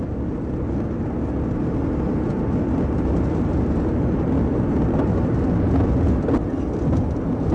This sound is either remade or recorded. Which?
recorded